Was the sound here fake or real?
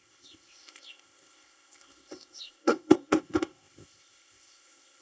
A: fake